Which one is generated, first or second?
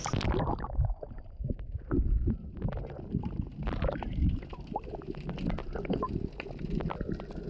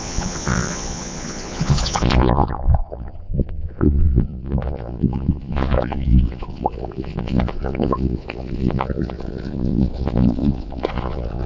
second